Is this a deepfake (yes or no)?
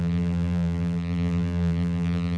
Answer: yes